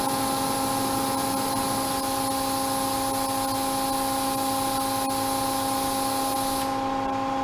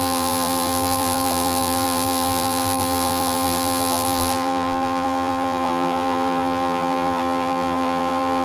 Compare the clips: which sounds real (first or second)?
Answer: first